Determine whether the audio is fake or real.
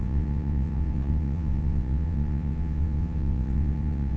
fake